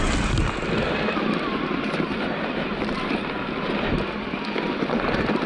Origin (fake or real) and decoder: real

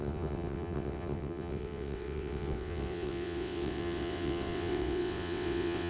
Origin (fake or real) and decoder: fake, vocoder, WaveNeXt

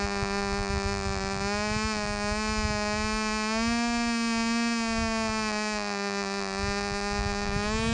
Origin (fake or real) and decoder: real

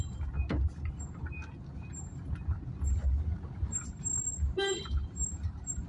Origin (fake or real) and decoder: real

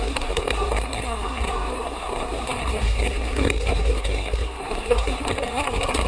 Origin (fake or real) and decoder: fake, codec, SNAC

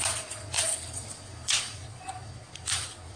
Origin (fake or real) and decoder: fake, vocoder, Vocos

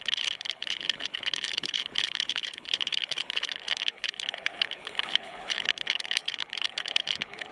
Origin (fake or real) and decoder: fake, codec, HILCodec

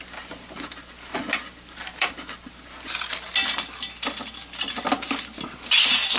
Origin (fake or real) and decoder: real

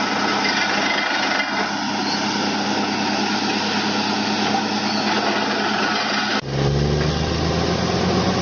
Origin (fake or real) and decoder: real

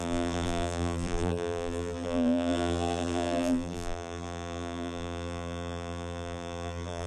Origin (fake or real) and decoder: fake, vocoder, BigVGAN v2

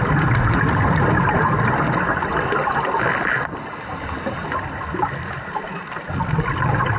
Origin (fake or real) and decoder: real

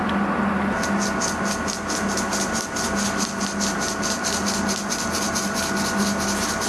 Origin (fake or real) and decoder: real